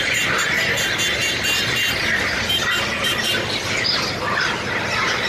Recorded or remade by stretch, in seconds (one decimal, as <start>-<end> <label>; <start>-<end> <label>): 0.0-5.3 recorded